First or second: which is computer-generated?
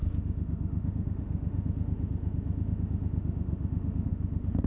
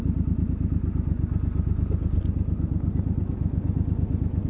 first